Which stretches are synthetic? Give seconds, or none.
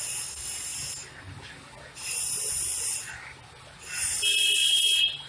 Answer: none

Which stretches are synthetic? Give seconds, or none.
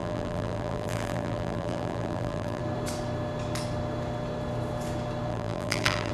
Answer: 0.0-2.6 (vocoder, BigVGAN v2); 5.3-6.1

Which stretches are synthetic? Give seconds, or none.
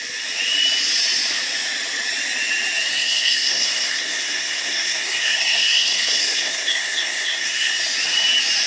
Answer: 2.9-7.7 (codec, SNAC)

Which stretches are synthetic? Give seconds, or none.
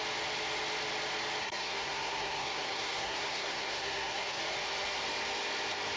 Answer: 1.4-4.4 (codec, SNAC)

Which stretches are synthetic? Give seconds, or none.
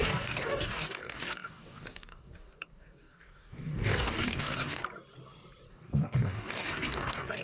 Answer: 0.0-4.8 (codec, DAC); 5.7-7.4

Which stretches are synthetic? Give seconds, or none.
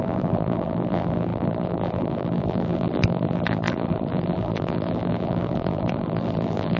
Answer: 0.0-6.8 (vocoder, BigVGAN v2)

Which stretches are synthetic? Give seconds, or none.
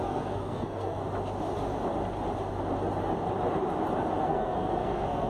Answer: 0.0-1.0 (codec, SNAC); 4.2-5.3